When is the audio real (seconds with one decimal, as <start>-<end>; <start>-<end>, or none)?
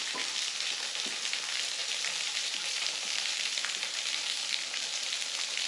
0.0-1.8; 4.3-5.7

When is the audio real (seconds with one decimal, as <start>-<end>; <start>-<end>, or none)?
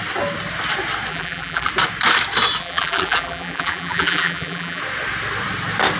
0.0-1.1; 1.7-2.6; 4.8-6.0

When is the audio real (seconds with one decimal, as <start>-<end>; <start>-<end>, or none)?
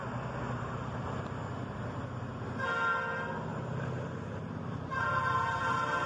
0.0-3.5; 5.1-6.1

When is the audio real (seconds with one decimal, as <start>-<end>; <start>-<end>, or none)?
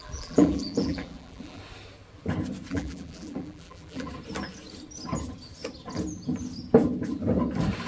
1.6-2.7; 4.1-7.9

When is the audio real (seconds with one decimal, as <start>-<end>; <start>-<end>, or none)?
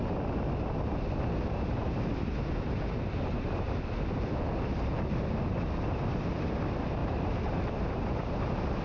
0.0-7.0; 8.4-8.8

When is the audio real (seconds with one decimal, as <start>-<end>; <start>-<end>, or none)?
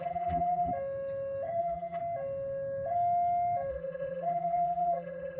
0.7-1.6; 2.0-3.7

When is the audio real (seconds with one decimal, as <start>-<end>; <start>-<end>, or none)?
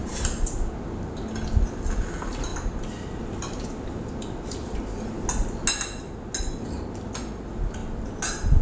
0.7-8.6